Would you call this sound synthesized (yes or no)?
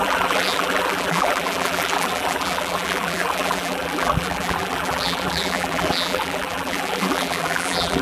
yes